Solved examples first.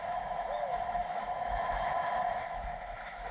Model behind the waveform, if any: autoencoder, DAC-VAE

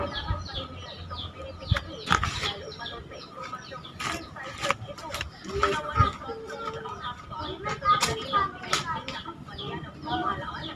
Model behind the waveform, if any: none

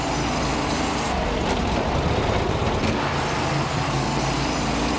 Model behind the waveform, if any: none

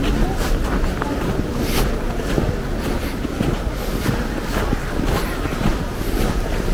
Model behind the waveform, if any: none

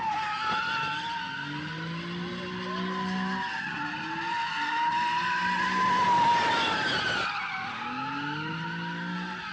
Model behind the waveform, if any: none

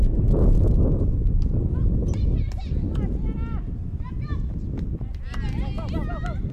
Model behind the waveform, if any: none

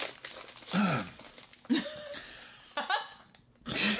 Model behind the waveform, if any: none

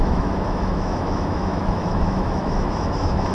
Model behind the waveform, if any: autoencoder, DAC-VAE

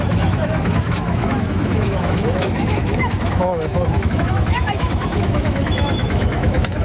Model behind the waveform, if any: autoencoder, DAC-VAE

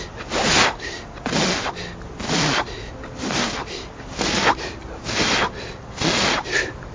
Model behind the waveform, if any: none